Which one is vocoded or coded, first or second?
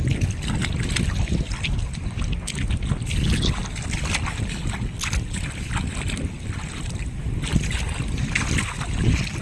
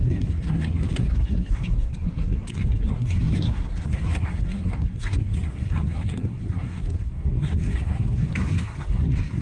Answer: second